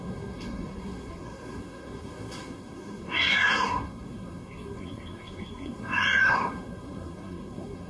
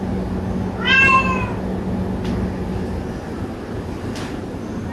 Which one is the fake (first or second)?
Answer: first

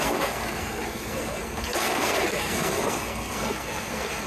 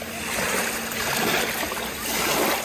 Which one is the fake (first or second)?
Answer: first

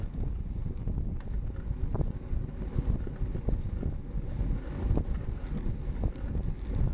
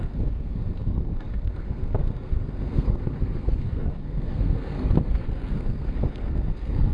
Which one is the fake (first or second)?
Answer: second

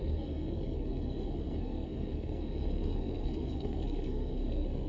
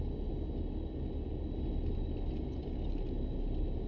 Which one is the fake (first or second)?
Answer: first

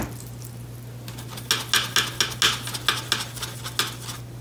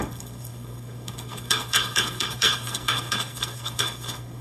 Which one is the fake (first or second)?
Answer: second